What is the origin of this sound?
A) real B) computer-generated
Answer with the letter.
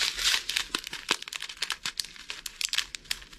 A